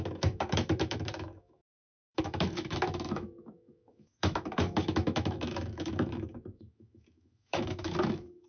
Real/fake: fake